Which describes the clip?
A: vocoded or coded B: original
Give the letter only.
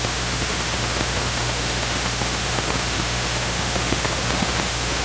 A